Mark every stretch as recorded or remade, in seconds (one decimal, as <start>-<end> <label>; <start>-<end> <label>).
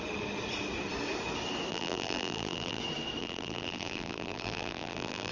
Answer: 0.0-1.7 recorded; 1.7-2.8 remade; 2.8-3.2 recorded; 3.2-5.3 remade